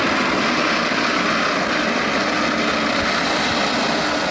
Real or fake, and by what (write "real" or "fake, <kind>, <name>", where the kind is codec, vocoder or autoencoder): real